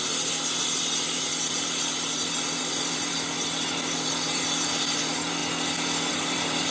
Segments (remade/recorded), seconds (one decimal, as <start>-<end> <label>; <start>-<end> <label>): 0.0-5.4 remade; 5.4-6.1 recorded; 6.1-6.7 remade